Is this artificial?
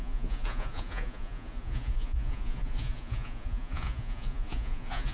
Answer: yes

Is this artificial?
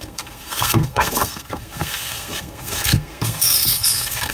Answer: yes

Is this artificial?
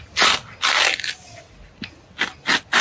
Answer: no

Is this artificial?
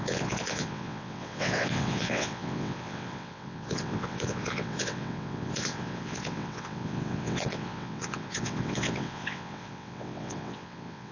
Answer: yes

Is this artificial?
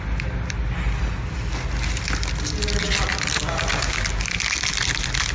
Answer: no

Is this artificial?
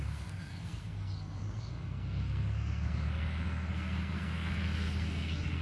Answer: yes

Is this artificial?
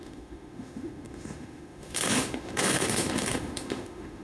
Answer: yes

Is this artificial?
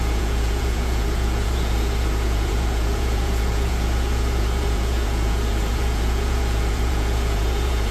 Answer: yes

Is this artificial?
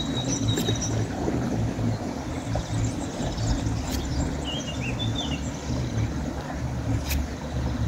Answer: no